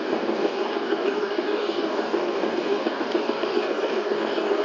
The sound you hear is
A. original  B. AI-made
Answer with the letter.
B